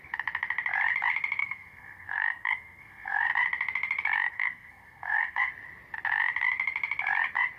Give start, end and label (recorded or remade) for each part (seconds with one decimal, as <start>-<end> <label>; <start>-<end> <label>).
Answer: 0.0-1.4 recorded; 1.4-3.3 remade; 3.3-4.3 recorded; 4.3-5.5 remade; 5.5-7.6 recorded